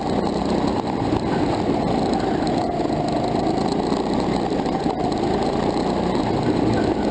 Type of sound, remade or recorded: recorded